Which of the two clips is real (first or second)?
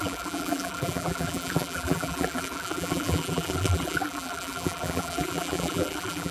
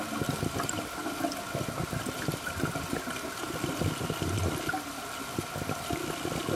second